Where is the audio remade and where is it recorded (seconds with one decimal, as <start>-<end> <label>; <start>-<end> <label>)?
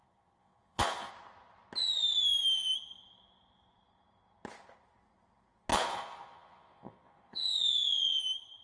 0.0-1.1 remade; 1.1-5.7 recorded; 5.7-8.2 remade; 8.2-8.6 recorded